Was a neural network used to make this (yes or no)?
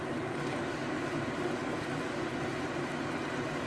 no